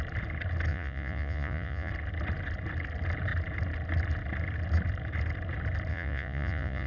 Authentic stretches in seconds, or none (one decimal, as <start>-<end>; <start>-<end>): 0.0-0.7; 1.9-5.9